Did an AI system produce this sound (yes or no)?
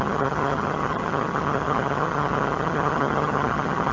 yes